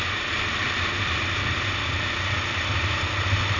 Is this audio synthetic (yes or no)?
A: no